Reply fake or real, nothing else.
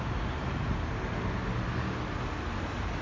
real